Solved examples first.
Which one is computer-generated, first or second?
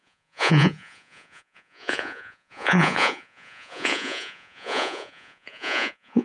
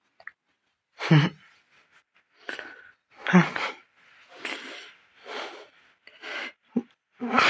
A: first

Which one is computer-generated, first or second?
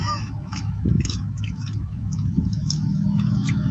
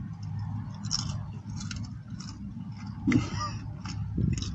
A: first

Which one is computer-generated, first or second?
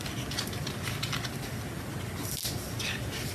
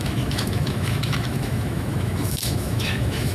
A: second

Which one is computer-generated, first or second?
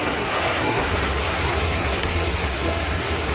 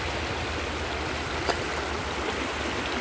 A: first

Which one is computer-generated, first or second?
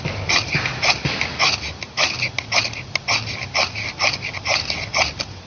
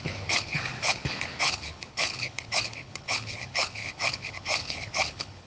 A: second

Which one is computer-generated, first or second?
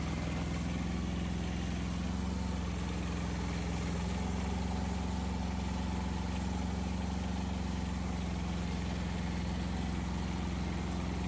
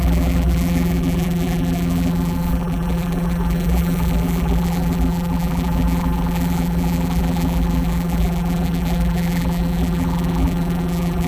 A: second